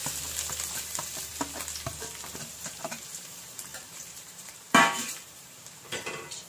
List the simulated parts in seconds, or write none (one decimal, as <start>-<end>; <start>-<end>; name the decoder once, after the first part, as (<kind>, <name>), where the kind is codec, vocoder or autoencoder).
0.7-1.3 (vocoder, BigVGAN v2); 2.5-6.5